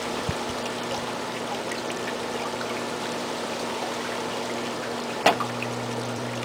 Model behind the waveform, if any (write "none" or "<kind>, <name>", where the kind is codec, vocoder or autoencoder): vocoder, BigVGAN v2